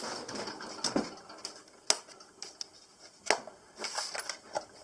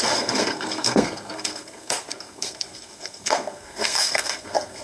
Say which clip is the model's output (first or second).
second